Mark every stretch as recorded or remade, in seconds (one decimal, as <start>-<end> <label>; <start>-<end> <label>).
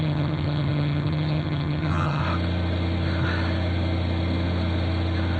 0.0-2.2 remade; 2.2-5.4 recorded